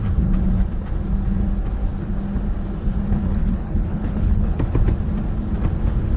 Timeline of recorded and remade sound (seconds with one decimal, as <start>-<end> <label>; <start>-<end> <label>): 0.0-3.3 recorded; 3.3-4.6 remade; 4.6-6.2 recorded